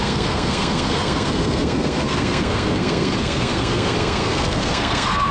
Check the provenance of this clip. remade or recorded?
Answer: remade